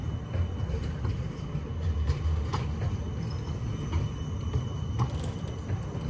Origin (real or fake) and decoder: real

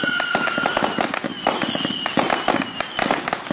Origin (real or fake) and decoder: real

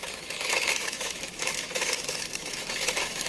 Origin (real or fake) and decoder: fake, autoencoder, DAC-VAE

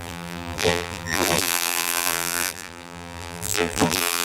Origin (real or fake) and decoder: fake, vocoder, BigVGAN v2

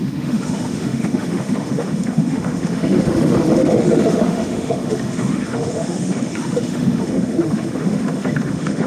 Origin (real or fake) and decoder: fake, autoencoder, DAC-VAE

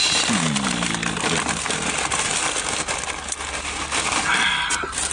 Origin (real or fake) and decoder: real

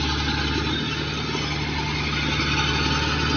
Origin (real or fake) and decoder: real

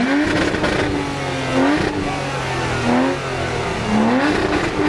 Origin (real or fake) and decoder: real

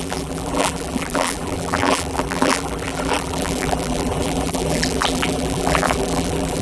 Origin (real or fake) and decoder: fake, vocoder, BigVGAN v2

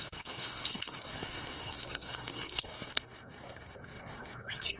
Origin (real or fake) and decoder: fake, codec, SNAC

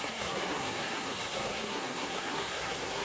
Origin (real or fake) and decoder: fake, codec, SNAC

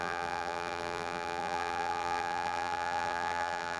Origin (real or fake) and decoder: fake, vocoder, BigVGAN v2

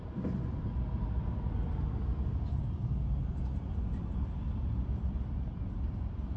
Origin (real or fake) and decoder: real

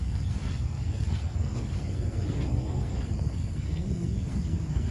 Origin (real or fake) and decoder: fake, codec, SNAC